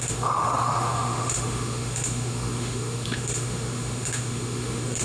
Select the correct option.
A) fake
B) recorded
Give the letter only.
A